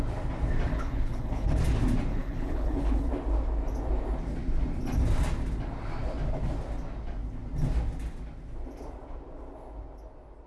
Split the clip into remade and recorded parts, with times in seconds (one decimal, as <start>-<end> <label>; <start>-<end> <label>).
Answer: 0.0-0.7 recorded; 0.7-1.6 remade; 1.6-2.1 recorded; 2.1-3.1 remade; 3.1-10.5 recorded